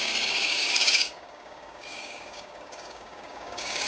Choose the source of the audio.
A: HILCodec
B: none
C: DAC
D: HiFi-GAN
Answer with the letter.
C